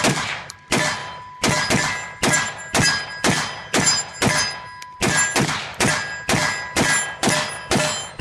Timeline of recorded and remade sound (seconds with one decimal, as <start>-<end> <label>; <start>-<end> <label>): 0.0-8.2 recorded